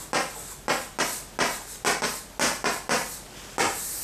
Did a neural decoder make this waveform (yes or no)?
no